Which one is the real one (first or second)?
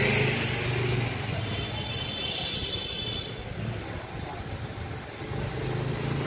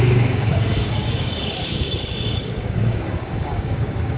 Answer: first